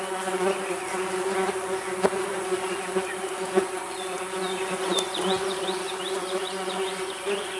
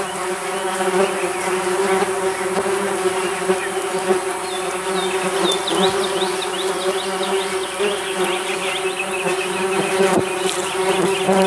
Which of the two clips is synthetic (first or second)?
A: first